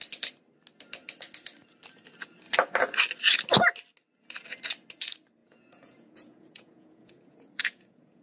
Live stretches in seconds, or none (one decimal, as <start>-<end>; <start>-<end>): 0.0-5.4